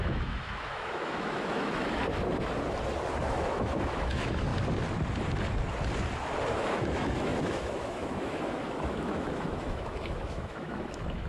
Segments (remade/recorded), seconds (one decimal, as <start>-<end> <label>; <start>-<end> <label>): 0.0-2.0 remade; 2.0-3.3 recorded; 3.3-4.5 remade; 4.5-6.5 recorded; 6.5-11.3 remade